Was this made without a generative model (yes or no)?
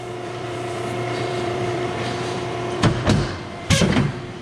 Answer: no